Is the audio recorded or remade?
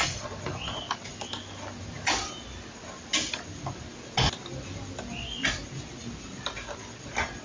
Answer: recorded